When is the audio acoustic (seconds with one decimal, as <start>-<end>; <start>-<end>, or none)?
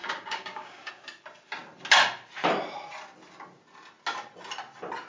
0.9-5.1